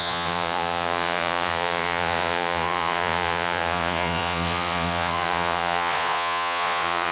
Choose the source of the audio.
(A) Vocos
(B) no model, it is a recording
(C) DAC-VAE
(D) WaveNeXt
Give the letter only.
A